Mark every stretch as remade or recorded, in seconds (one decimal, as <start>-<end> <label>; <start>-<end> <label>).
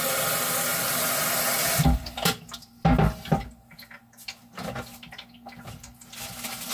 0.0-0.7 recorded; 0.7-2.4 remade; 2.4-6.7 recorded